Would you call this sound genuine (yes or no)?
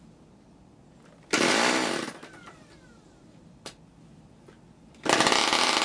yes